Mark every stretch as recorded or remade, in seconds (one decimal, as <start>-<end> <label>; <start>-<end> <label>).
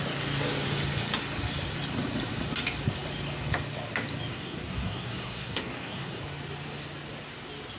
0.0-4.3 recorded; 4.3-6.2 remade; 6.2-7.8 recorded